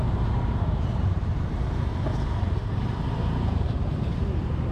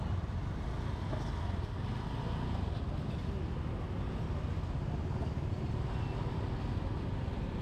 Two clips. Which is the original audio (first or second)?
second